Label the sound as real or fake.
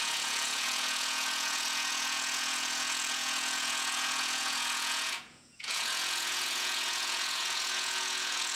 fake